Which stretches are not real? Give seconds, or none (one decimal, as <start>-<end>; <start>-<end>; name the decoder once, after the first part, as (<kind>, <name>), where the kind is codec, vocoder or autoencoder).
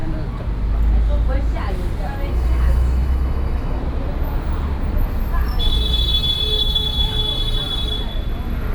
2.3-3.8 (autoencoder, DAC-VAE); 6.6-7.1